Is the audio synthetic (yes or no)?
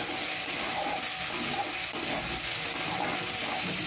no